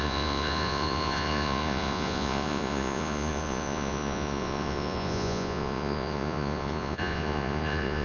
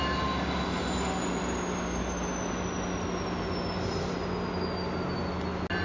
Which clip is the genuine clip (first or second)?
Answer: second